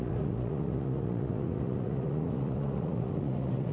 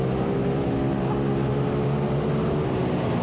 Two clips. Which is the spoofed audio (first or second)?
first